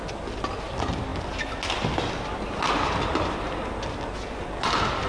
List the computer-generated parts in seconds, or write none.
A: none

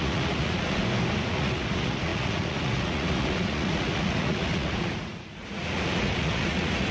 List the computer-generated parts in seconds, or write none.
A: 0.0-0.8 (vocoder, Vocos); 1.3-6.9

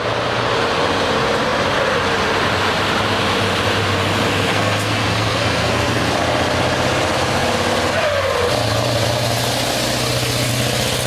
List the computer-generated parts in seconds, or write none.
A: 4.3-6.0 (codec, SNAC)

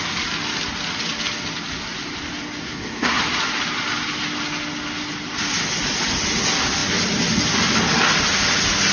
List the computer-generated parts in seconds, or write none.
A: 2.6-3.2 (codec, SNAC)

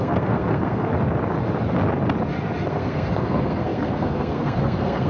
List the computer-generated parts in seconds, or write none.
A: 0.0-0.9 (codec, SNAC); 2.7-5.1

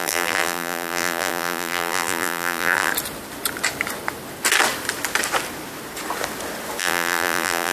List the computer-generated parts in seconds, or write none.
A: 0.0-2.9 (vocoder, BigVGAN v2); 6.8-7.7

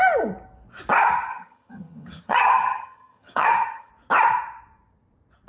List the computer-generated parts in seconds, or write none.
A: 1.3-3.9 (vocoder, HiFi-GAN)

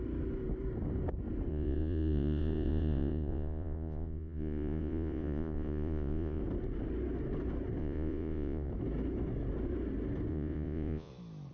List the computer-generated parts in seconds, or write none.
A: 1.5-6.4 (vocoder, Vocos); 7.8-8.7; 10.3-11.1